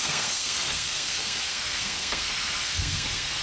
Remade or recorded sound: remade